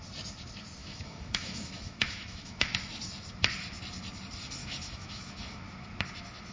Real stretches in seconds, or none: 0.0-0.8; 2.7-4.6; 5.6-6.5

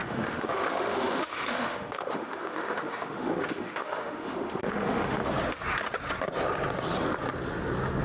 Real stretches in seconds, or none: 5.2-8.0

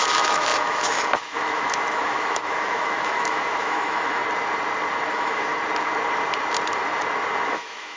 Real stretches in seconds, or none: 4.2-5.1; 5.5-7.5

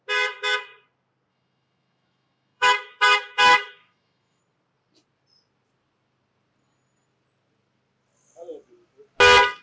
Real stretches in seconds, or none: 0.0-1.3; 4.4-9.6